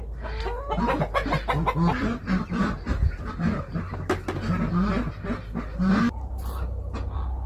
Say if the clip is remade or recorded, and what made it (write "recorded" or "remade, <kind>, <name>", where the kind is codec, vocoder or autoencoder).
recorded